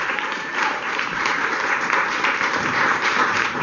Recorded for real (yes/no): no